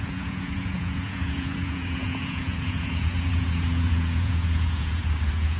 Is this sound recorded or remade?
remade